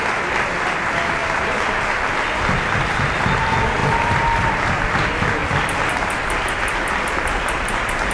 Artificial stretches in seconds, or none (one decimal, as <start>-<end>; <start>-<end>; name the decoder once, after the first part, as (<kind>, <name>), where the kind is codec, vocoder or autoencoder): 1.2-1.9 (vocoder, BigVGAN v2); 3.8-4.7; 5.4-5.9